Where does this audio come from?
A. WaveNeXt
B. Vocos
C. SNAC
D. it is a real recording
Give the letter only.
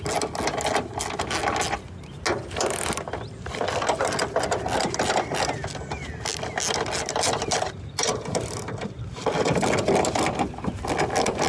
D